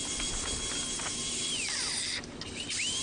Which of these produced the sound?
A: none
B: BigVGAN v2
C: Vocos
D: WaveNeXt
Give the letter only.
A